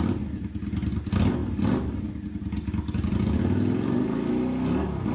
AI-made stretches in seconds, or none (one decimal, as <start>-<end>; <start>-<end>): none